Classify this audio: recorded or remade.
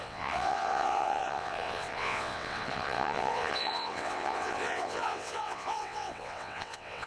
remade